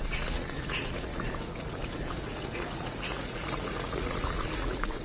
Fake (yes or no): yes